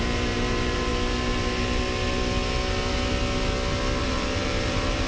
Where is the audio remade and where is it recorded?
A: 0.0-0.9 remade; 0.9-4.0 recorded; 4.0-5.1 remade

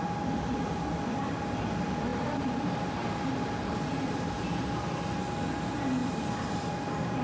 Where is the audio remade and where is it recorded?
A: 0.0-2.1 recorded; 2.1-4.7 remade; 4.7-6.0 recorded; 6.0-6.7 remade; 6.7-7.2 recorded

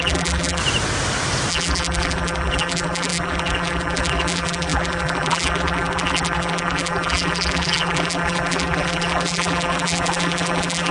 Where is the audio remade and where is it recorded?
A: 0.0-0.6 remade; 0.6-1.5 recorded; 1.5-10.9 remade

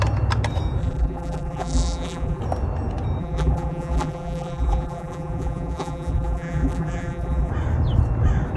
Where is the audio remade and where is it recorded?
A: 0.0-0.8 recorded; 0.8-2.4 remade; 2.4-3.2 recorded; 3.2-7.5 remade; 7.5-8.6 recorded

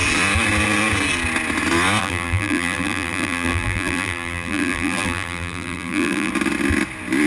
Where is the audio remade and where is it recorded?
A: 0.0-2.0 recorded; 2.0-6.3 remade; 6.3-7.3 recorded

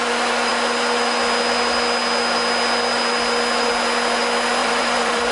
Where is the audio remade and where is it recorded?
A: 0.0-4.6 recorded; 4.6-5.3 remade